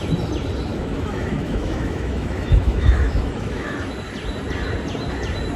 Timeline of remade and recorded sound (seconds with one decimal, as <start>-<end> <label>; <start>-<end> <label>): 0.0-0.7 recorded; 0.7-3.9 remade; 3.9-5.6 recorded